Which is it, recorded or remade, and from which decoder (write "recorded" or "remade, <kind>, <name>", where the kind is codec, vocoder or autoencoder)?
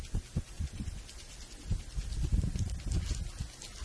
recorded